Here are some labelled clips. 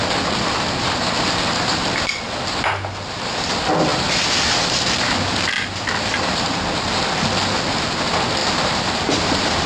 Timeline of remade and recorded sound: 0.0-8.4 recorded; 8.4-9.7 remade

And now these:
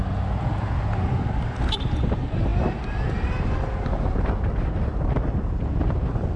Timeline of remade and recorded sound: 0.0-6.4 recorded

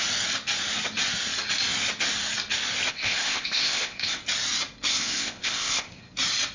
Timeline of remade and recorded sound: 0.0-2.9 recorded; 2.9-4.2 remade; 4.2-4.9 recorded; 4.9-6.0 remade; 6.0-6.5 recorded

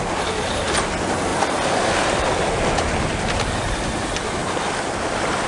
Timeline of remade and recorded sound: 0.0-1.3 recorded; 1.3-2.3 remade; 2.3-4.4 recorded; 4.4-5.1 remade; 5.1-5.5 recorded

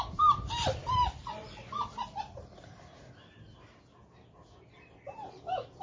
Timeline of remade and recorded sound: 0.0-0.8 recorded; 0.8-3.1 remade; 3.1-5.8 recorded